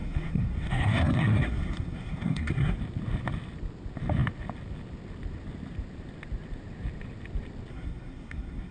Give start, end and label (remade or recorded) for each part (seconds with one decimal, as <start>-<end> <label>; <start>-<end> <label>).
0.0-2.8 remade; 2.8-7.7 recorded; 7.7-8.7 remade